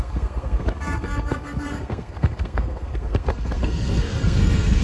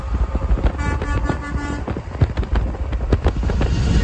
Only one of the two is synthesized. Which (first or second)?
first